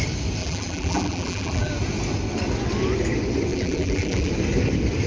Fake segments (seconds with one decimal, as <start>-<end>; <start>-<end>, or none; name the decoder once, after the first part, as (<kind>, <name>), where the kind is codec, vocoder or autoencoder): 0.4-1.7 (vocoder, BigVGAN v2); 3.5-4.3